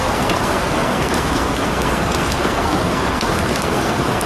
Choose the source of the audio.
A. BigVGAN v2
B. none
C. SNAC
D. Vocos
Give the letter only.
C